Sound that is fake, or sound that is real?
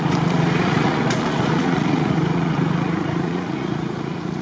fake